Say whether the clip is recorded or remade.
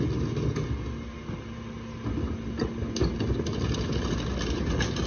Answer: recorded